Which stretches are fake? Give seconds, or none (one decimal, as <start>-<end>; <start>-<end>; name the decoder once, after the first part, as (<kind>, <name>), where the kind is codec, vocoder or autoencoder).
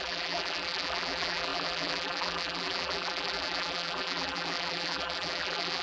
0.0-5.8 (vocoder, BigVGAN v2)